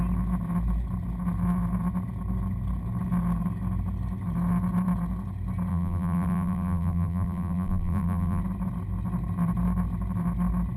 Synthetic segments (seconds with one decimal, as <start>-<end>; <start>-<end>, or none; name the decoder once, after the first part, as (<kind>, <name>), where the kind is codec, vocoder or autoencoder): 5.7-8.4 (vocoder, BigVGAN v2)